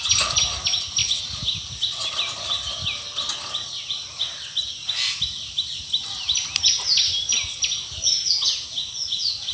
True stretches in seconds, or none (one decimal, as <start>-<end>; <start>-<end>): 0.0-9.5